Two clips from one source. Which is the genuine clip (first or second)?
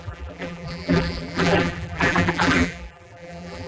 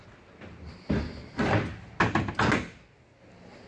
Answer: second